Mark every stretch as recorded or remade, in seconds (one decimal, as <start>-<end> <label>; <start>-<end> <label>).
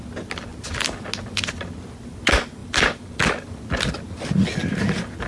0.0-2.6 recorded; 2.6-3.6 remade; 3.6-5.3 recorded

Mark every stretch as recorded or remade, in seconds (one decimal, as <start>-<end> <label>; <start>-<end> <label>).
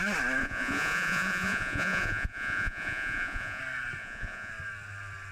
0.0-0.4 recorded; 0.4-3.6 remade; 3.6-4.0 recorded; 4.0-4.5 remade; 4.5-5.3 recorded